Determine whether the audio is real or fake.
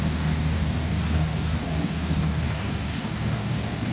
fake